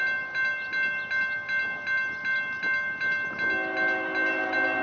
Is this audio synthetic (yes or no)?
no